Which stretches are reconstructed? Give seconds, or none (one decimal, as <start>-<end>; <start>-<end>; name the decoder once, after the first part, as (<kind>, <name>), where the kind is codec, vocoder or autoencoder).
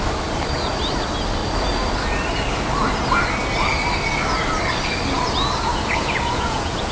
5.7-6.9 (vocoder, Vocos)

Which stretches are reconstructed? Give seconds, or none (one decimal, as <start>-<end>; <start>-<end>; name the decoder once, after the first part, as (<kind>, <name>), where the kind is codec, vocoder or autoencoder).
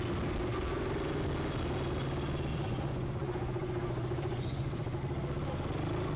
2.5-5.0 (vocoder, Vocos)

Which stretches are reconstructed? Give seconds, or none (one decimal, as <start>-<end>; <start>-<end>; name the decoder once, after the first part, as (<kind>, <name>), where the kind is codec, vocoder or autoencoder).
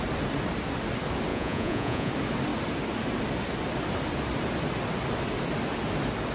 1.3-2.1 (vocoder, Vocos)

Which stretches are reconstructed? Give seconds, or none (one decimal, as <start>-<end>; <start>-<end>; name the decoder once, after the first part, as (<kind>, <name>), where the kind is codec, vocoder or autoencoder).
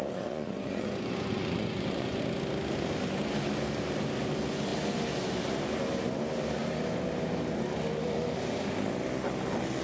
0.0-2.2 (vocoder, Vocos)